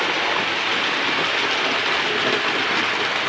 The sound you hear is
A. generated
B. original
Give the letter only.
B